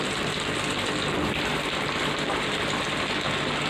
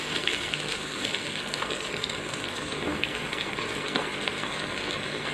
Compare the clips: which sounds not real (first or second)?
second